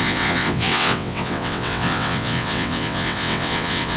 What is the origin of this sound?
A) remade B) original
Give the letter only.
A